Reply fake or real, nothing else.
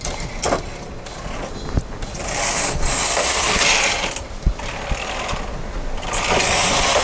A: real